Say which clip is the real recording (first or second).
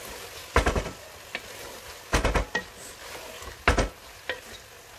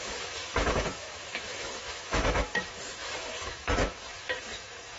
first